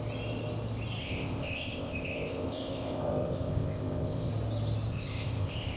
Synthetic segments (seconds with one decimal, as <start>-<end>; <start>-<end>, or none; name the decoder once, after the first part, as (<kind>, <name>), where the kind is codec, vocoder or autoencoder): 1.0-4.3 (codec, ZipCodec); 4.9-5.8